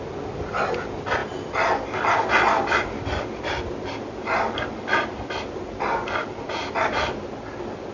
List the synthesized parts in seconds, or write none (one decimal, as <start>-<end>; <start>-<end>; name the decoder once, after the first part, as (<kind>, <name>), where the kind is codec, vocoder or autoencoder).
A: none